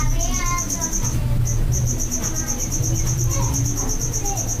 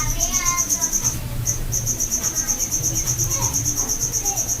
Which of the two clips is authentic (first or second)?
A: first